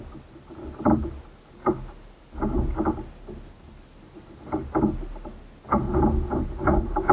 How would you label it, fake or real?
real